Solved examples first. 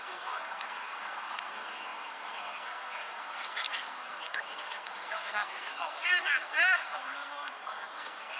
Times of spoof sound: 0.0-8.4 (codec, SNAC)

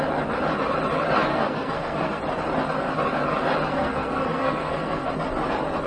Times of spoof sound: 1.3-2.2 (codec, SNAC); 3.7-5.1